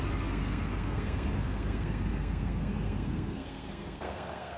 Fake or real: fake